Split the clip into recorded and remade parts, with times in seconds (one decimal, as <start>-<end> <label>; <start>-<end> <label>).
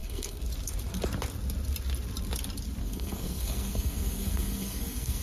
0.0-0.5 remade; 0.5-2.8 recorded; 2.8-5.2 remade